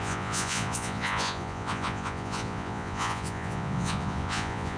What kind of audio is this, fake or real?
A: fake